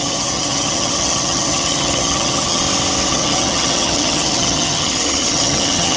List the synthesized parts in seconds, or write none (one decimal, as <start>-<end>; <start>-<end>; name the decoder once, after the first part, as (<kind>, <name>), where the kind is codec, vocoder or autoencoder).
0.0-2.6 (vocoder, HiFi-GAN); 3.1-6.0